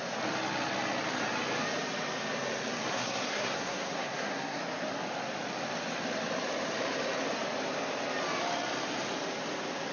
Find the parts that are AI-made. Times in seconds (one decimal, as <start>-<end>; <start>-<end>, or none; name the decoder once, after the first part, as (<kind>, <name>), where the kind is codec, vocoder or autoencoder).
2.9-4.6 (codec, SNAC)